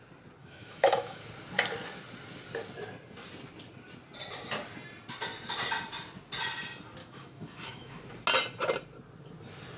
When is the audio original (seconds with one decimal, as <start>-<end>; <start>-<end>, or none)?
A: 0.0-0.4; 1.2-7.0; 8.0-9.8